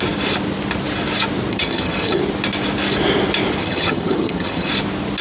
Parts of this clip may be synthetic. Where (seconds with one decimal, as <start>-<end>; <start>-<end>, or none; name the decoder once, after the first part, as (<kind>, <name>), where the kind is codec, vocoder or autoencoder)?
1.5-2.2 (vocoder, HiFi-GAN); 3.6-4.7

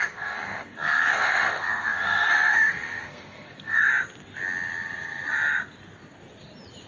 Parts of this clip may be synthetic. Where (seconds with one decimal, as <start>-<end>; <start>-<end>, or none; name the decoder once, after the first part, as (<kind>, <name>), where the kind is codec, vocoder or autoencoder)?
0.0-3.9 (codec, SNAC)

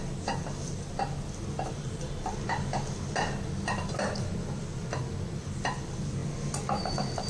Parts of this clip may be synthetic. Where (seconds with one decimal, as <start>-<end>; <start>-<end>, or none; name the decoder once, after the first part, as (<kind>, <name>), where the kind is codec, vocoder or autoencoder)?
none